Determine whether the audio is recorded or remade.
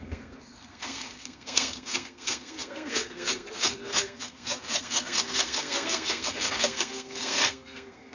remade